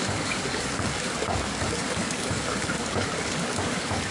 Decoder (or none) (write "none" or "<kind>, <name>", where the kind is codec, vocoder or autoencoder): codec, DAC